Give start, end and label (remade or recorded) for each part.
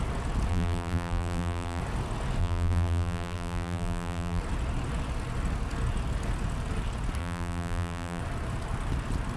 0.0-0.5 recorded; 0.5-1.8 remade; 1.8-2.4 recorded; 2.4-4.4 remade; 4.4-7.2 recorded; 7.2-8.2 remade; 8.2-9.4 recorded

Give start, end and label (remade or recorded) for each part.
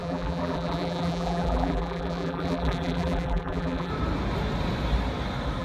0.0-3.9 remade; 3.9-5.6 recorded